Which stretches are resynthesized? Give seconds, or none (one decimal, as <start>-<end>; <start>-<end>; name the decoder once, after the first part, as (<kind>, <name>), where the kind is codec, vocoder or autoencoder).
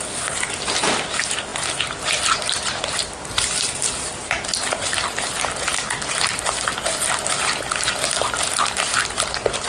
none